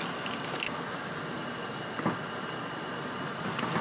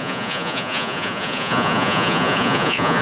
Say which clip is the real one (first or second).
first